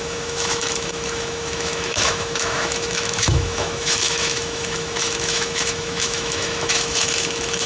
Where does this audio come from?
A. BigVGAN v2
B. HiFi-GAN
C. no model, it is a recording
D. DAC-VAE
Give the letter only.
D